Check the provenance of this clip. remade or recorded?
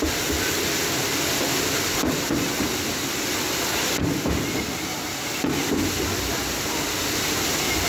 recorded